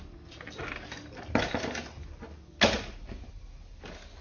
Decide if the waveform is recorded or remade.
recorded